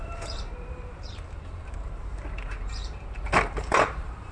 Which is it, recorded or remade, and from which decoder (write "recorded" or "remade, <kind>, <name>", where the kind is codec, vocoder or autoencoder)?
remade, vocoder, BigVGAN v2